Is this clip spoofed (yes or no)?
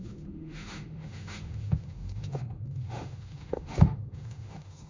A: yes